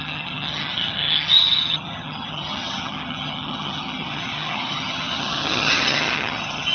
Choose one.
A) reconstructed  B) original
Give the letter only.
A